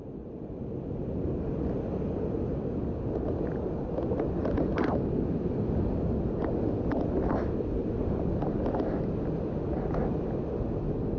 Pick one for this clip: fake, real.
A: real